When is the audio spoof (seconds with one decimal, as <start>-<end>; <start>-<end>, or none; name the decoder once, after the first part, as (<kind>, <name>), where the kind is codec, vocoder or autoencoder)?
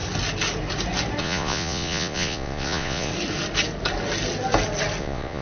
1.2-3.1 (vocoder, Vocos); 5.0-5.4